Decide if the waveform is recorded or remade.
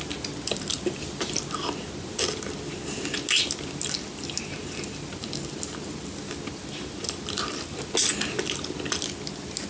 recorded